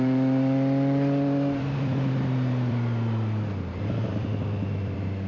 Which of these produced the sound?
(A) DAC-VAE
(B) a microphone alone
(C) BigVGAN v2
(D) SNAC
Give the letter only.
C